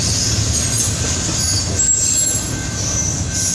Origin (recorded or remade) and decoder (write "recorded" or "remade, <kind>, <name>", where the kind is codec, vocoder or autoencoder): recorded